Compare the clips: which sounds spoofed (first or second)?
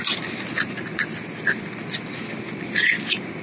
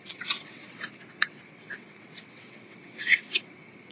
second